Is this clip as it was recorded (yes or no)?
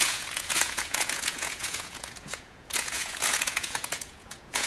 no